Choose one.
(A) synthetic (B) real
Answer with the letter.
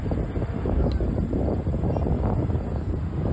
B